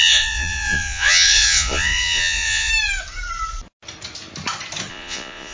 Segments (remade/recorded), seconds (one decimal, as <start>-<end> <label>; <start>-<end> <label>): 0.0-2.7 remade; 2.7-4.9 recorded; 4.9-5.5 remade